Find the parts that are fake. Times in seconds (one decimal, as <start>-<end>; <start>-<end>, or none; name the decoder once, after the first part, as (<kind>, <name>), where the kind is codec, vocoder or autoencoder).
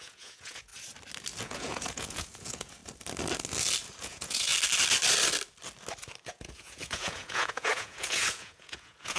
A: 0.0-0.7 (vocoder, Vocos); 1.4-2.8; 4.0-4.5; 6.2-9.2